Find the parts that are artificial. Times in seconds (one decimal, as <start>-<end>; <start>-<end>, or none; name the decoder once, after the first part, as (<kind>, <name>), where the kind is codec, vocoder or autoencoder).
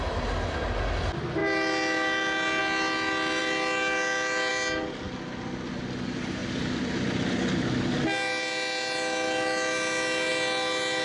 none